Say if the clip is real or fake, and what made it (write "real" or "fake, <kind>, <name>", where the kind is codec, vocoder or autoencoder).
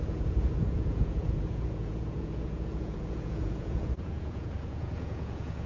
fake, vocoder, Vocos